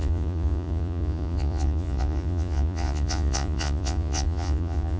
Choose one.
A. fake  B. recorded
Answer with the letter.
A